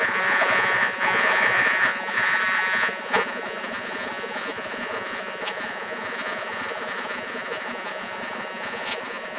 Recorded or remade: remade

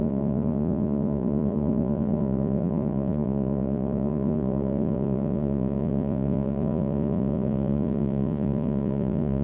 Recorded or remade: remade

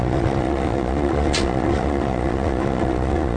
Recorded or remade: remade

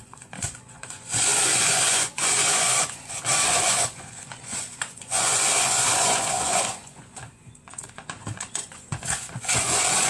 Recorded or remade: remade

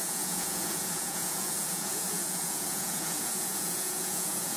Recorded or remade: remade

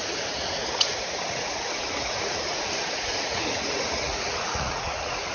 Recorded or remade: remade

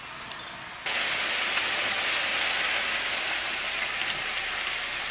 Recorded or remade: recorded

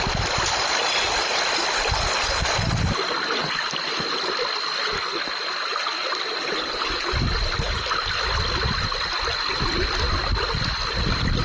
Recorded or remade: recorded